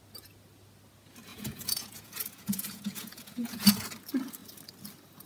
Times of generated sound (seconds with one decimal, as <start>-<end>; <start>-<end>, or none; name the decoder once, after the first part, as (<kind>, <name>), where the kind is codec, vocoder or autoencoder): 1.3-3.7 (vocoder, Vocos)